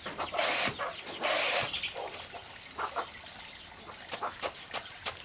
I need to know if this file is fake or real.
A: real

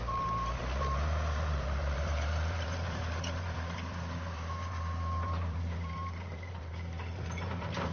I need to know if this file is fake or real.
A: fake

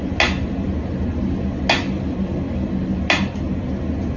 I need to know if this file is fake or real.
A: real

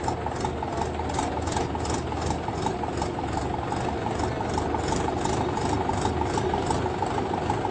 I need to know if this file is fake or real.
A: real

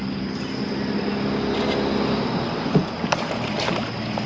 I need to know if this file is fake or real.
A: real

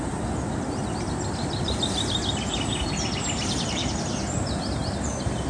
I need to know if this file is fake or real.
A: real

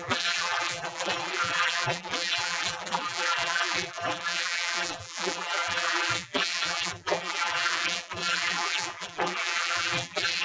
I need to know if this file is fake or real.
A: fake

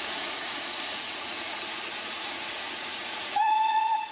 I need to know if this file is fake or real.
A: fake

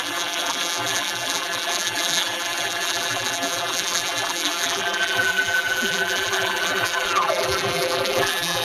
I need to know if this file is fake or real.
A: fake